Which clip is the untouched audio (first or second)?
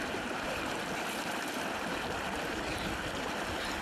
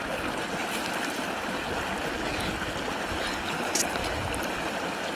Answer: second